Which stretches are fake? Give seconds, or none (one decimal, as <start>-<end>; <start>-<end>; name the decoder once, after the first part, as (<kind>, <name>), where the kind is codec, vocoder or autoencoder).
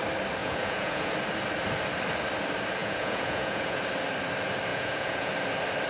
0.4-1.1 (vocoder, Vocos); 2.8-3.8; 4.7-5.3